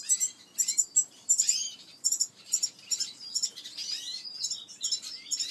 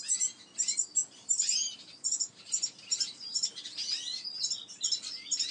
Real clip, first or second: second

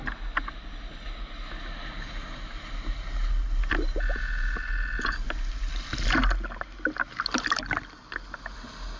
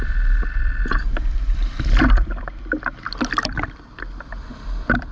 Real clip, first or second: first